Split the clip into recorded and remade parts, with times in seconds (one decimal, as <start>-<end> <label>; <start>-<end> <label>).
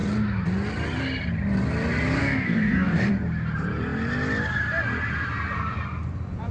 0.0-2.2 recorded; 2.2-3.1 remade; 3.1-6.5 recorded